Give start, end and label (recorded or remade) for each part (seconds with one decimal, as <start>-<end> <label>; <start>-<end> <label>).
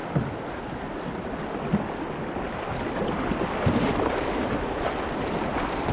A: 0.0-5.9 recorded